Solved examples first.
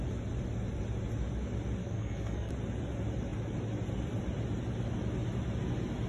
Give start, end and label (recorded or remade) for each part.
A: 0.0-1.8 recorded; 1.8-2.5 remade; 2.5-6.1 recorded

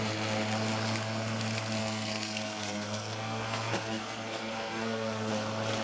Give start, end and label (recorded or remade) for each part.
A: 0.0-1.8 recorded; 1.8-5.3 remade; 5.3-5.8 recorded

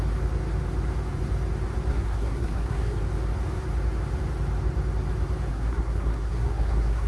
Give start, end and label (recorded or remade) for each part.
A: 0.0-1.9 recorded; 1.9-3.0 remade; 3.0-5.5 recorded; 5.5-7.1 remade

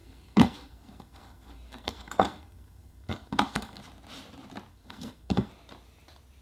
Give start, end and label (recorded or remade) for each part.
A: 0.0-3.8 remade; 3.8-4.7 recorded; 4.7-5.5 remade; 5.5-6.4 recorded

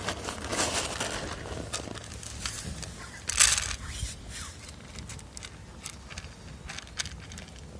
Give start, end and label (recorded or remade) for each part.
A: 0.0-7.8 recorded

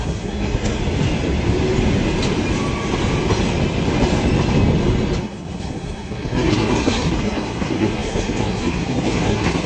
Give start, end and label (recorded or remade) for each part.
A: 0.0-0.8 remade; 0.8-5.2 recorded; 5.2-9.7 remade